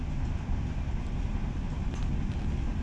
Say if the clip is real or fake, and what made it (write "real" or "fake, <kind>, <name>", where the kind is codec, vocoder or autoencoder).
real